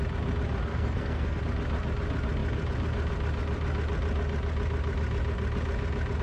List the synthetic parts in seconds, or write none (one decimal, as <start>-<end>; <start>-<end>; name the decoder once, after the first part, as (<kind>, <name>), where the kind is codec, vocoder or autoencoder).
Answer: 0.7-1.4 (codec, SNAC)